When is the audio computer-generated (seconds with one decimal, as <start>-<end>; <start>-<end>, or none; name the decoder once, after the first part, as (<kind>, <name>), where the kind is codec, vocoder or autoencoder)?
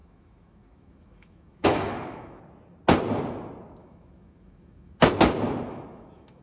0.0-2.4 (autoencoder, DAC-VAE); 3.8-5.1; 5.7-6.4